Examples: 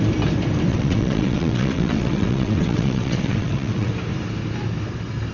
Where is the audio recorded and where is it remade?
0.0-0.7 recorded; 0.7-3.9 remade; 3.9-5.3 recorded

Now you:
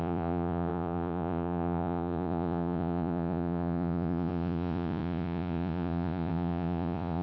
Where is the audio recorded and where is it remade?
0.0-7.2 remade

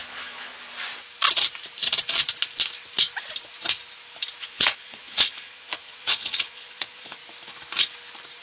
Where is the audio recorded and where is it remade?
0.0-0.5 remade; 0.5-4.4 recorded; 4.4-7.2 remade; 7.2-8.4 recorded

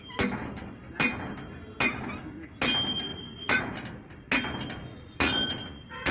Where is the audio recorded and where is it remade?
0.0-3.1 recorded; 3.1-3.6 remade; 3.6-4.9 recorded; 4.9-6.1 remade

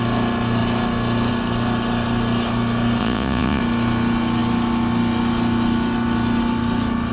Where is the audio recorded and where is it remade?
0.0-3.0 recorded; 3.0-3.6 remade; 3.6-7.1 recorded

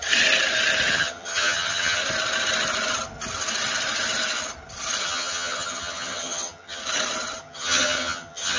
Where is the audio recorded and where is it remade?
0.0-0.9 recorded; 0.9-2.0 remade; 2.0-5.0 recorded; 5.0-6.8 remade; 6.8-7.4 recorded; 7.4-8.6 remade

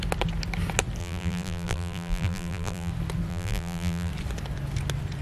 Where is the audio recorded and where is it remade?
0.0-1.0 recorded; 1.0-2.9 remade; 2.9-3.3 recorded; 3.3-4.1 remade; 4.1-5.2 recorded